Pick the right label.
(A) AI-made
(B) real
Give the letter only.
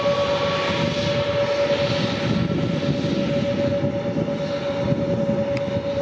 B